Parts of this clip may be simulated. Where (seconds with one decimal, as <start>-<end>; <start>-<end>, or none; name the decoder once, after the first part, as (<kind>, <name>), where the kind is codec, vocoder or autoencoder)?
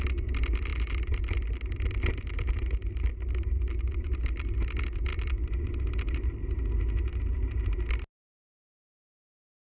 0.7-4.1 (vocoder, BigVGAN v2); 5.1-6.6